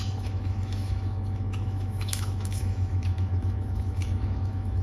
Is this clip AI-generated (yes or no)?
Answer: yes